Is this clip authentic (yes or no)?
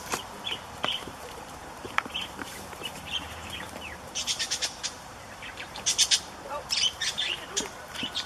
no